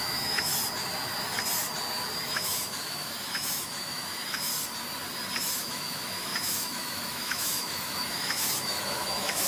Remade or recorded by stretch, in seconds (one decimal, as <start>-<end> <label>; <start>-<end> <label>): 0.0-0.5 remade; 0.5-2.3 recorded; 2.3-4.5 remade; 4.5-5.4 recorded; 5.4-9.5 remade